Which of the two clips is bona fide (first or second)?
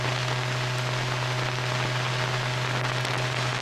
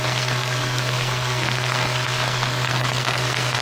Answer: first